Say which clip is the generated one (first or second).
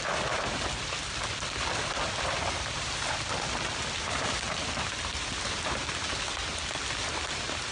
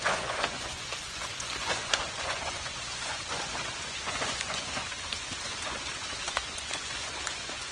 second